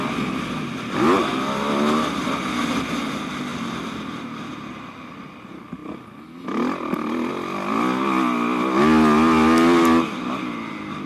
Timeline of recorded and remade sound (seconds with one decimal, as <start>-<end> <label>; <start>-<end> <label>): 0.0-11.1 recorded